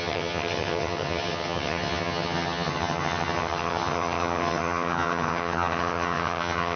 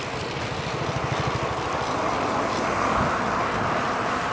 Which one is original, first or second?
second